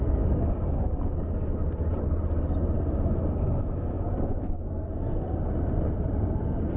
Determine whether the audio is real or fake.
real